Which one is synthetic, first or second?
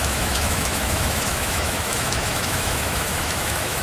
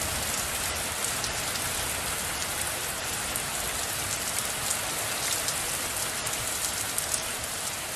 first